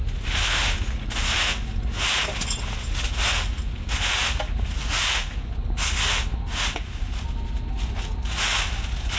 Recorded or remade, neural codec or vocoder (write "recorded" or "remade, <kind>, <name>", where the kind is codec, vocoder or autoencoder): recorded